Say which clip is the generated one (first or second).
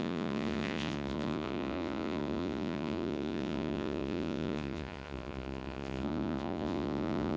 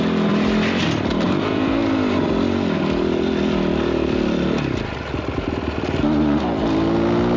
first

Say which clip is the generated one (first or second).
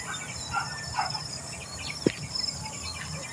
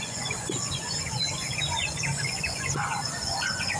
second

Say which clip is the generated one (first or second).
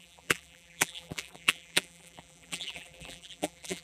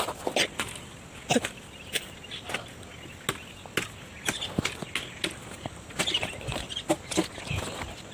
first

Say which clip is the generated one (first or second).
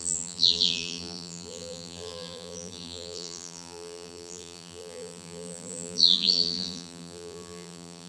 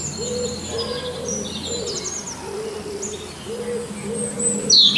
first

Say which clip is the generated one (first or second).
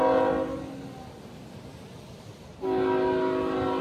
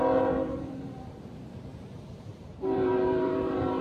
second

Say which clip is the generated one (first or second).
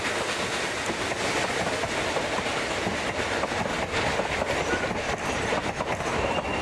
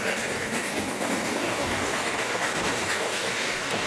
second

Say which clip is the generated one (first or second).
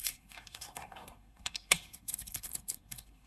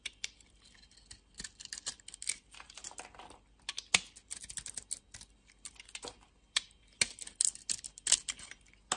first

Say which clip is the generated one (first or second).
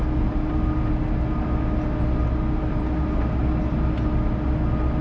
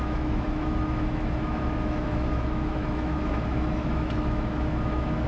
second